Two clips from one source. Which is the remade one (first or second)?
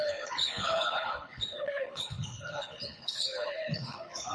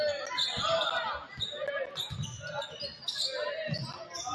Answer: first